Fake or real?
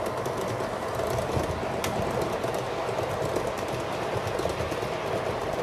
real